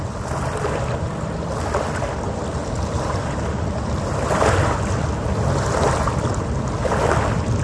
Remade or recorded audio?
recorded